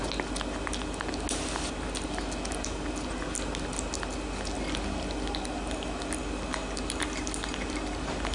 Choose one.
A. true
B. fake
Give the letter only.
A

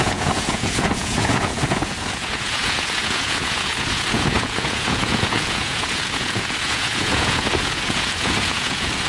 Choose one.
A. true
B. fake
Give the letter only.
B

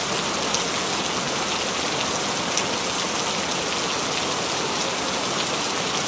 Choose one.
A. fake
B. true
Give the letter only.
B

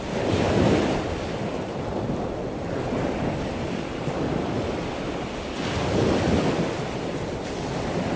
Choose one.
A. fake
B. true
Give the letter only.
B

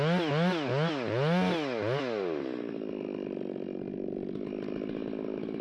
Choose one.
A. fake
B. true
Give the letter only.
B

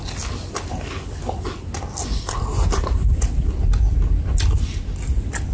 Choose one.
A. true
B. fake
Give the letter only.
A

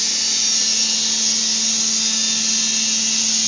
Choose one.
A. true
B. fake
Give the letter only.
A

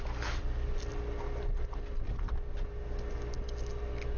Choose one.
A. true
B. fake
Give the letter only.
A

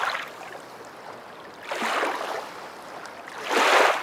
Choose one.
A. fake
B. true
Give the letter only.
B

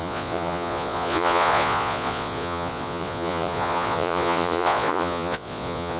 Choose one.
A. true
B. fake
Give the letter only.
B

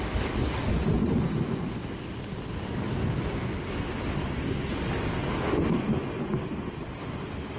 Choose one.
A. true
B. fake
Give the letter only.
A